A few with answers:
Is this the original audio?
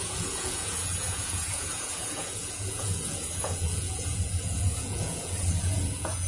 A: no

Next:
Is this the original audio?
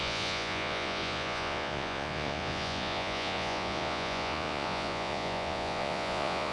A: no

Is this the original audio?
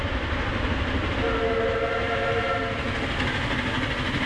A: yes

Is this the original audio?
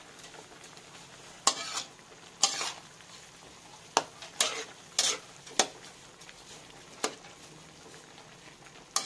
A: yes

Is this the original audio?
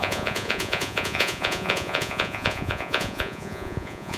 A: no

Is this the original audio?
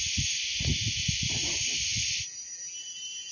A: yes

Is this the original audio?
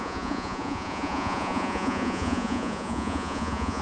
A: no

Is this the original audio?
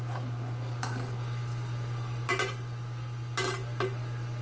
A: yes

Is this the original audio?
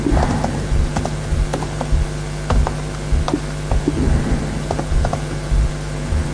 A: yes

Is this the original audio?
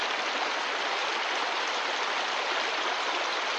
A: yes